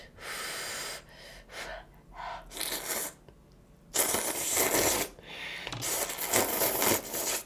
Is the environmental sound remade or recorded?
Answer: recorded